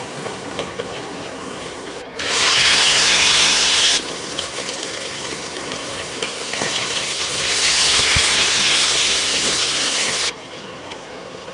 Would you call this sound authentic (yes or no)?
no